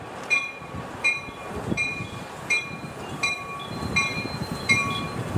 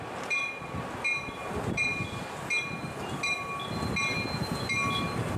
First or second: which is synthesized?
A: first